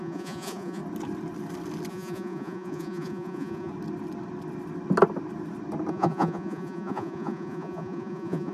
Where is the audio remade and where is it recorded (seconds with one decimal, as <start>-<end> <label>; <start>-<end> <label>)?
0.0-0.8 remade; 0.8-1.9 recorded; 1.9-3.7 remade; 3.7-5.9 recorded; 5.9-8.5 remade